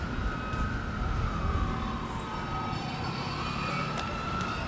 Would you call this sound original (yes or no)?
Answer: yes